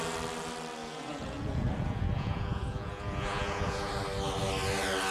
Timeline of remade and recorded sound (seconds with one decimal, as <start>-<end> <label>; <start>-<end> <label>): 0.0-0.8 recorded; 0.8-3.9 remade; 3.9-5.1 recorded